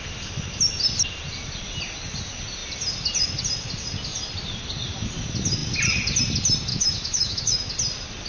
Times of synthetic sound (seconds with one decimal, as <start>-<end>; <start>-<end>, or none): 6.7-7.7